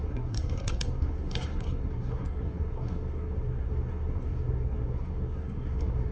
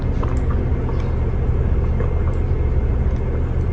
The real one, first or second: second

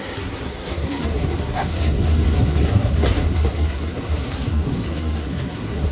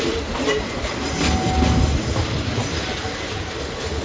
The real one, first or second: second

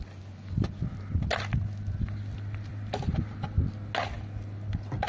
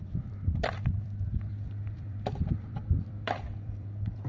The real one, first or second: first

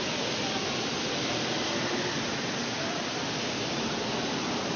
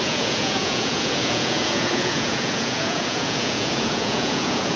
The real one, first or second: first